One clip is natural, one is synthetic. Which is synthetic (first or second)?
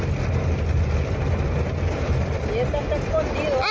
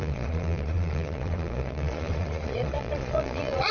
second